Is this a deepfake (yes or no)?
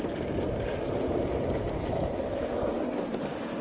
no